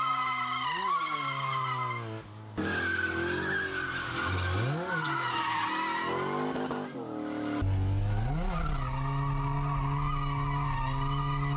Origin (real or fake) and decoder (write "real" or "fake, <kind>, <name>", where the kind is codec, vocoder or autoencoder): real